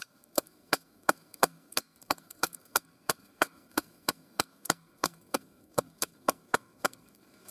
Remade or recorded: remade